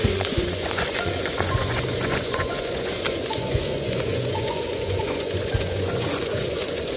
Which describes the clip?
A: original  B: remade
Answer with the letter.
B